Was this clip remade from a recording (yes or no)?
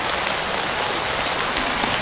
no